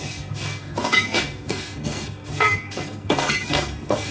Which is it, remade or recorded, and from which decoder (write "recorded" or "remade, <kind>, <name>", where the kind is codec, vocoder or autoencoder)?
remade, codec, SNAC